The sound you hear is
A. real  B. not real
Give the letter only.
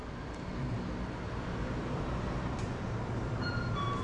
A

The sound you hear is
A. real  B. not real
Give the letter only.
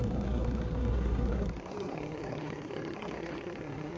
B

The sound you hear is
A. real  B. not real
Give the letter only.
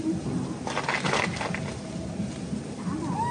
A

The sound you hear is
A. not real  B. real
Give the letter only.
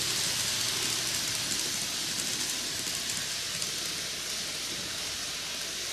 B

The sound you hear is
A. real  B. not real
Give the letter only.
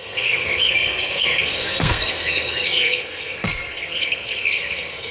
B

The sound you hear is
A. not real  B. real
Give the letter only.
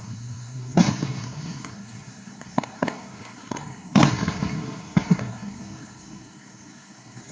A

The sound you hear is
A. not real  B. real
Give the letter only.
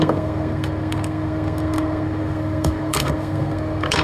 A